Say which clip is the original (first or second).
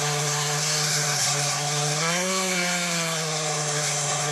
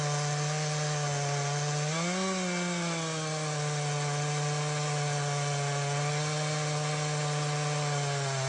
second